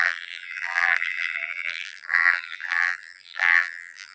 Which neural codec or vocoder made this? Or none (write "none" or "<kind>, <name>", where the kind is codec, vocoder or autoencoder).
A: vocoder, BigVGAN v2